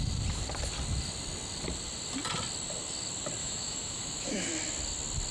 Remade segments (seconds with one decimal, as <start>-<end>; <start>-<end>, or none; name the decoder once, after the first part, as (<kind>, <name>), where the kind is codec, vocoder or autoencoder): 3.4-4.5 (autoencoder, DAC-VAE)